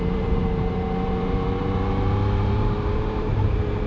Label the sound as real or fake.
fake